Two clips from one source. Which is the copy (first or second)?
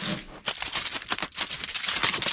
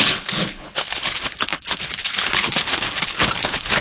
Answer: second